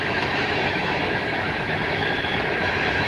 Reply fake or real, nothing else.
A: fake